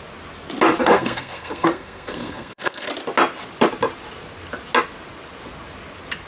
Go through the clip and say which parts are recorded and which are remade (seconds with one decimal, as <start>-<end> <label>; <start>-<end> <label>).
0.0-0.8 recorded; 0.8-2.9 remade; 2.9-6.3 recorded